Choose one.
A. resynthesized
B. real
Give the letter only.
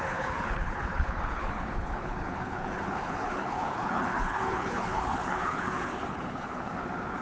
A